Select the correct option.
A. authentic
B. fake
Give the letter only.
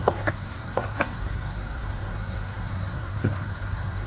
B